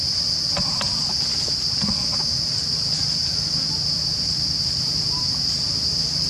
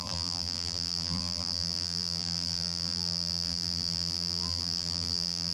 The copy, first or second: second